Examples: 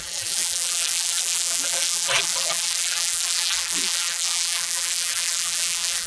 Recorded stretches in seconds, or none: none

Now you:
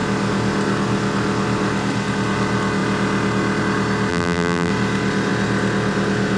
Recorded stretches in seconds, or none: 0.0-4.1; 4.7-6.4